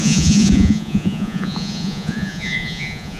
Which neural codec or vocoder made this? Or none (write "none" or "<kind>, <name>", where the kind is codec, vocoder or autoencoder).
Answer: vocoder, Vocos